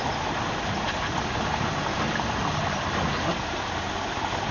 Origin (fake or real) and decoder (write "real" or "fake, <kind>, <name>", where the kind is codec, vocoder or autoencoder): real